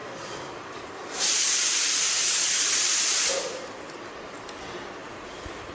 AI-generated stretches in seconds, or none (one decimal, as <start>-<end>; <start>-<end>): 0.0-3.3